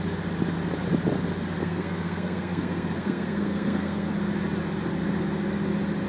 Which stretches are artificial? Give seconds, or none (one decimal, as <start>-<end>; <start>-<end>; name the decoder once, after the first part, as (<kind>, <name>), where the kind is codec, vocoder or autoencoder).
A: 1.6-4.1 (codec, SNAC)